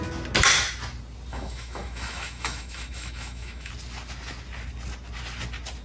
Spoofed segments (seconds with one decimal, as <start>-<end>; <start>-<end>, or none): 1.3-3.7